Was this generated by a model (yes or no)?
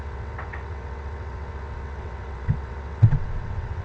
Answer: yes